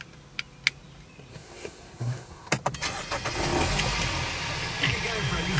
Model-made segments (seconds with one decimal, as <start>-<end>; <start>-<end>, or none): 1.3-2.5

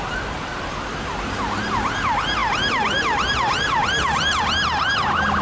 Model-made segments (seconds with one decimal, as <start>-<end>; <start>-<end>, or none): none

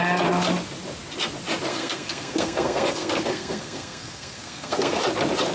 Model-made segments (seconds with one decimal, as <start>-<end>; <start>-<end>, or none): 1.7-5.0

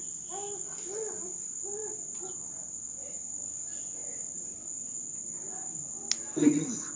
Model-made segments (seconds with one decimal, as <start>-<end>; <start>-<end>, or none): none

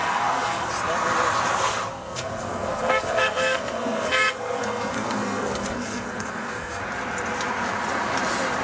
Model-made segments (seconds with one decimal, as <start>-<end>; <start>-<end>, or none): 0.0-0.7; 1.9-6.8

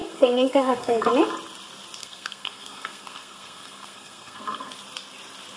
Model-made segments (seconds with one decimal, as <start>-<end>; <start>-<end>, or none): 0.0-1.1; 2.0-4.7

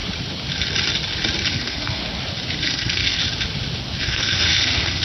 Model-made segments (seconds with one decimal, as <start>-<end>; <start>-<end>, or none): 1.5-2.0; 2.6-3.2; 4.0-5.0